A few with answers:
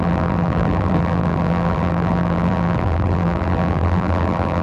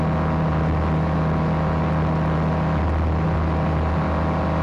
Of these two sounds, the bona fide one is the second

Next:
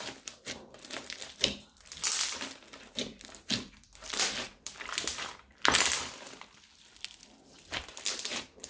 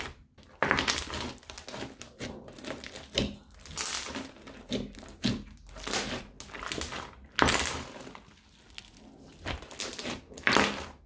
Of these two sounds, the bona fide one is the second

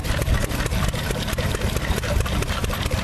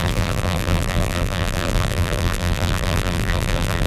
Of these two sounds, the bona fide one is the first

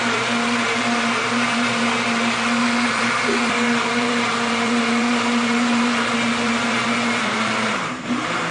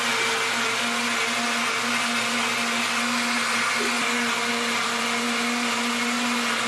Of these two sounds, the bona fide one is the second